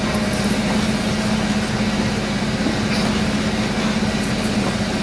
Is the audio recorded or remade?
recorded